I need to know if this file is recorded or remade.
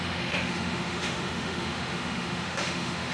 remade